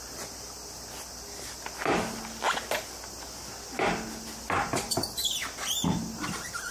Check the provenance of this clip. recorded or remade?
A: recorded